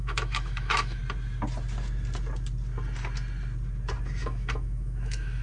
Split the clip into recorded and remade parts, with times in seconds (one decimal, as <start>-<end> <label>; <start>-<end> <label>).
0.0-1.0 remade; 1.0-4.2 recorded; 4.2-5.4 remade